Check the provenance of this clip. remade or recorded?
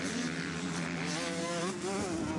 recorded